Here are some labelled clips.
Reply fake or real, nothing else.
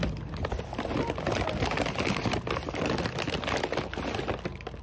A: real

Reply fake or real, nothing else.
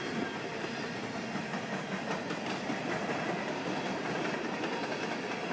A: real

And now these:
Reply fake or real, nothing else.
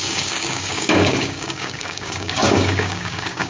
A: fake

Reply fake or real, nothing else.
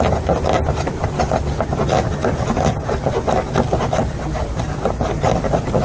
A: real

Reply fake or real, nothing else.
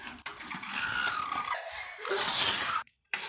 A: real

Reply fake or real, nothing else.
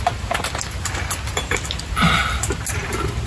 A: real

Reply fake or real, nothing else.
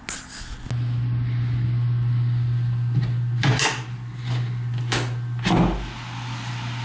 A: real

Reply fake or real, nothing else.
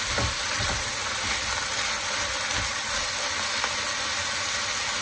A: real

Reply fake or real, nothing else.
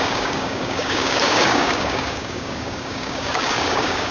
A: fake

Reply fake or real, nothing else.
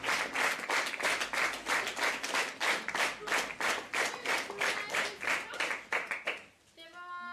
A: real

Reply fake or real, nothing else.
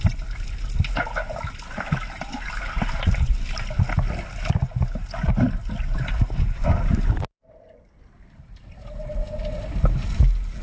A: real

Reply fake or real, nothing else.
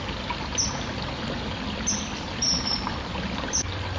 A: real